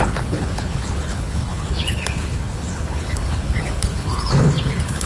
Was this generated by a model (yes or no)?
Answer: yes